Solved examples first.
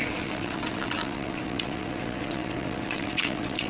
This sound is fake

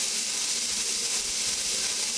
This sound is real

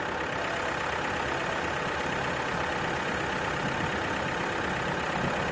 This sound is real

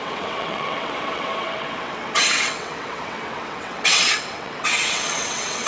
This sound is fake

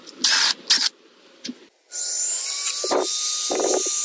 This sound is real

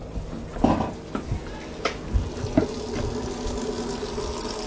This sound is real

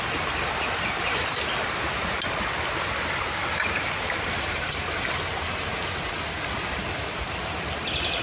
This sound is real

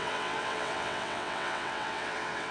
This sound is fake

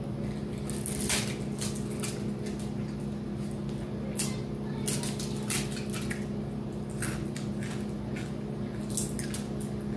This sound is real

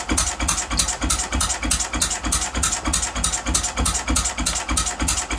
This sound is real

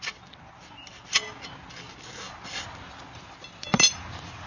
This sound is real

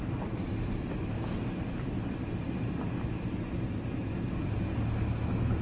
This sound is real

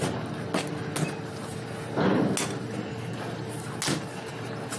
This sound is real